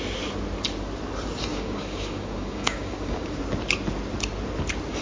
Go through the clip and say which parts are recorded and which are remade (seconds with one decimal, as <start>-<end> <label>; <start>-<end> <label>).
0.0-1.5 recorded; 1.5-3.4 remade; 3.4-5.0 recorded